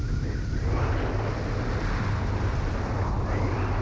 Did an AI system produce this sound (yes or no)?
no